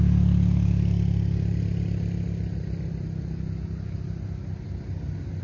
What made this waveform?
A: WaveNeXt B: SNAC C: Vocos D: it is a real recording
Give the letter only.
D